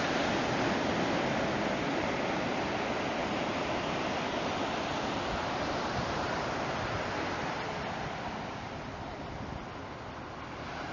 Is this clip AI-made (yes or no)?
no